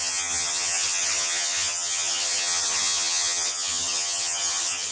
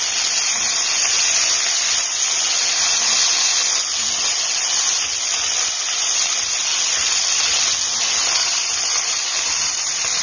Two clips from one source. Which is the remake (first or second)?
first